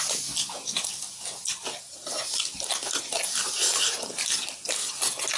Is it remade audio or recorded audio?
recorded